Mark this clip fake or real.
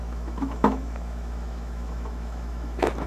fake